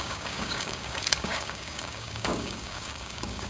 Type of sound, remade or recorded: remade